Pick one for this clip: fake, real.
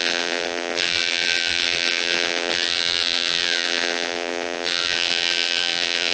fake